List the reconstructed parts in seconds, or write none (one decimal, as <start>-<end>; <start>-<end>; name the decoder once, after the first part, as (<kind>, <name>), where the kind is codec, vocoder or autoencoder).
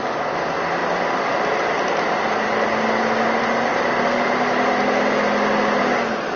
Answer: none